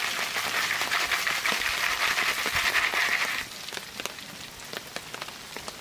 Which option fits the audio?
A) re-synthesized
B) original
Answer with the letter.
B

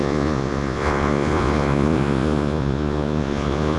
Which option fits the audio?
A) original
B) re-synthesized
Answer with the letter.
B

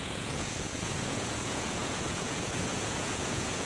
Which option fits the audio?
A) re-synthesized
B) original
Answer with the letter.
A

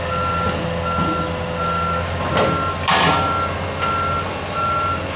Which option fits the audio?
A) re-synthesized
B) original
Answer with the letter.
B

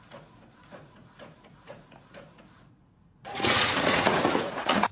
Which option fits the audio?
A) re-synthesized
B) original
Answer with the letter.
A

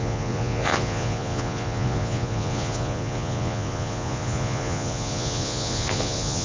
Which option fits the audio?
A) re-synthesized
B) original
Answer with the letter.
A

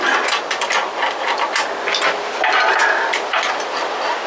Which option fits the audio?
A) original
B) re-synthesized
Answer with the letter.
A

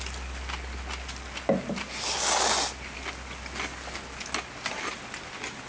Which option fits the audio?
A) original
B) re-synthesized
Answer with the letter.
A